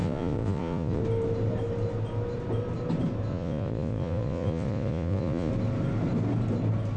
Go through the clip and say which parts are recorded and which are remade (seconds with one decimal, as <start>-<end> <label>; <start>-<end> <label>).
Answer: 0.0-1.0 remade; 1.0-3.3 recorded; 3.3-5.5 remade; 5.5-7.0 recorded